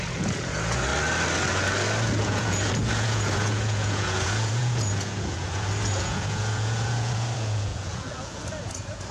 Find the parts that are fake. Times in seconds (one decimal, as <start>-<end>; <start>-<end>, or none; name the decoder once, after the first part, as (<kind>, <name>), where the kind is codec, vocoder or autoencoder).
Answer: 0.0-0.9 (vocoder, Vocos); 2.2-9.1